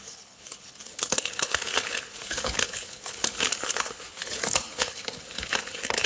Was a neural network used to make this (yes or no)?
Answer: yes